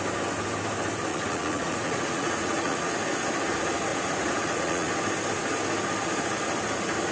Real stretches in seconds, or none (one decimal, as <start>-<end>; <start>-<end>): 0.0-1.1; 2.9-3.9; 4.9-7.1